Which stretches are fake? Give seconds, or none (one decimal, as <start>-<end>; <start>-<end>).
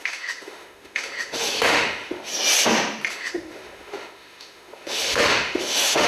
0.0-2.3; 3.1-6.1